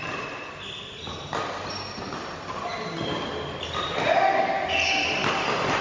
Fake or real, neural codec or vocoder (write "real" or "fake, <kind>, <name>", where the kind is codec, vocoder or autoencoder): real